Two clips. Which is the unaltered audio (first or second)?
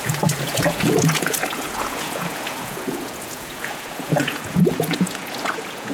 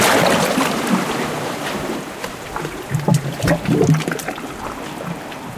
second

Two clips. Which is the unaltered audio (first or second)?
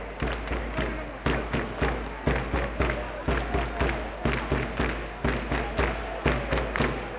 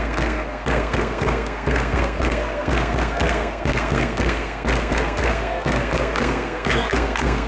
first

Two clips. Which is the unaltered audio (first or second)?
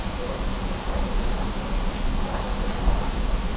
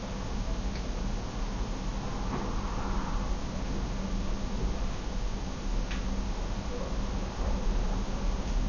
second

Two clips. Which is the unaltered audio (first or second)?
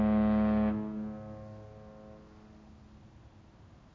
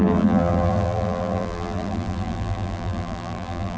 first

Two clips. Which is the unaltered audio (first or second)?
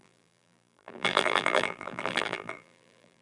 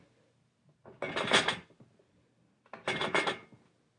second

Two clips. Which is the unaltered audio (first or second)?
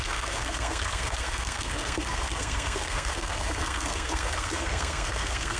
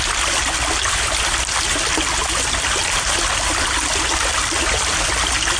second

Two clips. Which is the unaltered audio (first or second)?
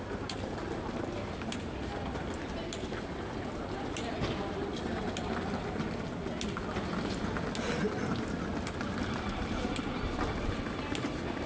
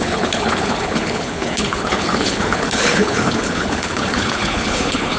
first